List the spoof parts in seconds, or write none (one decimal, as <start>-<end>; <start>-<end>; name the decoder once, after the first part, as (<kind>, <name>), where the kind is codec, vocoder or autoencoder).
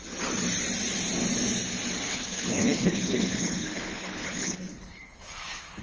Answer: 2.1-5.8 (codec, HILCodec)